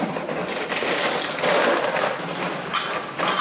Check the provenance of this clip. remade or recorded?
recorded